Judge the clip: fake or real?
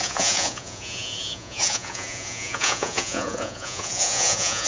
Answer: fake